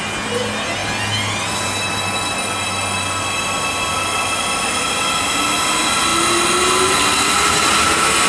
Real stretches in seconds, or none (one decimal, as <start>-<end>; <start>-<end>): 0.0-8.3